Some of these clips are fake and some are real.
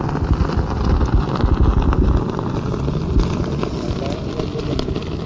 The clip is real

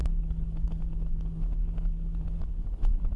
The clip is fake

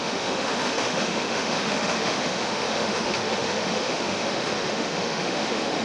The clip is fake